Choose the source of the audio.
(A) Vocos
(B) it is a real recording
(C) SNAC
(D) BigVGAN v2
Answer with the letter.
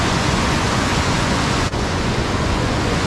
A